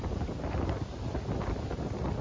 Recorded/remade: recorded